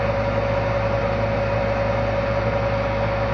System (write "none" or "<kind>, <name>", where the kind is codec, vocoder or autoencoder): none